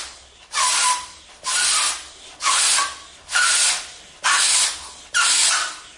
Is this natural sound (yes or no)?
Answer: yes